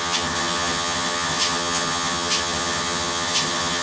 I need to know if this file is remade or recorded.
remade